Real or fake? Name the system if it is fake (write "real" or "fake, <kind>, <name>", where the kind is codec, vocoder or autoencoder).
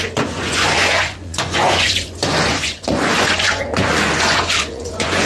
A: fake, vocoder, Vocos